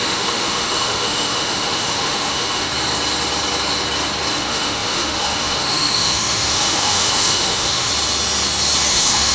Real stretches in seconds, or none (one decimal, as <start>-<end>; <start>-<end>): 2.7-4.3; 7.9-8.9